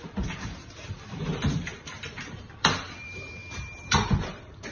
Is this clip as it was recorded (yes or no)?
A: no